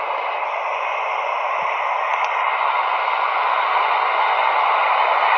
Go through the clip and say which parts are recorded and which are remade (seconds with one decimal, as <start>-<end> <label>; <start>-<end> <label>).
0.0-0.7 recorded; 0.7-1.3 remade; 1.3-2.1 recorded; 2.1-5.4 remade